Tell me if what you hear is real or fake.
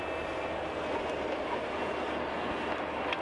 real